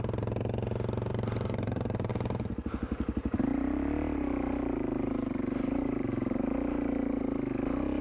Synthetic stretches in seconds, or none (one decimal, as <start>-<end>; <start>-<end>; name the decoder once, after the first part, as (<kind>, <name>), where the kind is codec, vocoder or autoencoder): 1.1-2.1 (vocoder, BigVGAN v2); 3.5-7.2